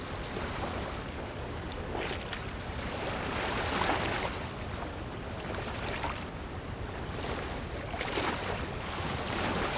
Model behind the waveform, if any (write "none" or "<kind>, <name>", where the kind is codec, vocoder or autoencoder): none